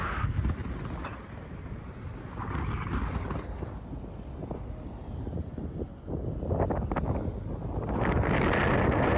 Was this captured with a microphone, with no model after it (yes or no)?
yes